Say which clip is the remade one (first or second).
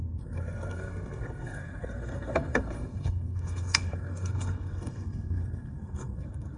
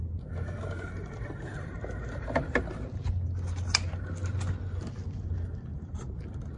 first